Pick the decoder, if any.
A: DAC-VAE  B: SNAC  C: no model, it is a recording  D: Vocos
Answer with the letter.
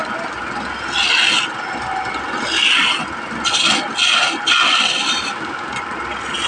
C